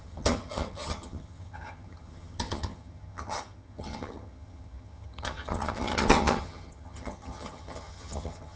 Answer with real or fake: fake